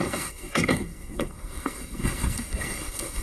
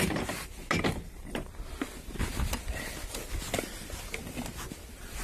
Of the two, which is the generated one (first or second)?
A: first